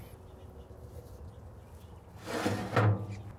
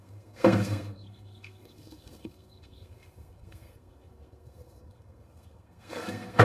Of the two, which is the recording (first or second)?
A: first